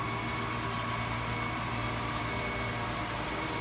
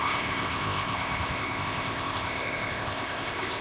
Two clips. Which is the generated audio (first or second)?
second